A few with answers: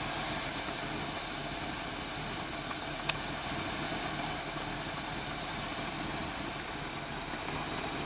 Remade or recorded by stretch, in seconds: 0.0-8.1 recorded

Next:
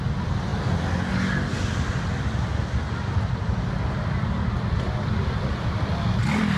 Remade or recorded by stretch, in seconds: 0.0-6.6 recorded

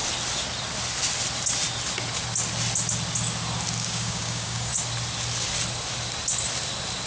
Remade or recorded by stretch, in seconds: 0.0-3.8 recorded; 3.8-4.7 remade; 4.7-7.1 recorded

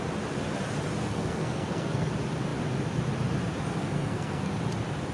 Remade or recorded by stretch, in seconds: 0.0-1.0 recorded; 1.0-2.1 remade; 2.1-3.8 recorded; 3.8-4.5 remade; 4.5-5.1 recorded

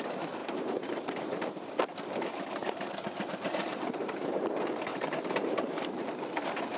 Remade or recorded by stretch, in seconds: 0.0-0.4 recorded; 0.4-4.5 remade; 4.5-4.9 recorded; 4.9-6.8 remade

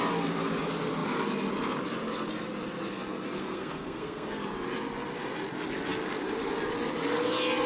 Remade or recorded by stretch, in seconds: 0.0-3.4 recorded; 3.4-4.3 remade; 4.3-7.7 recorded